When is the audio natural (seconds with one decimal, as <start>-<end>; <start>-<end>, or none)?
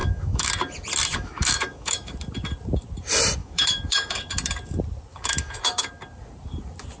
0.5-1.1; 2.1-3.4; 4.3-5.1; 5.9-7.0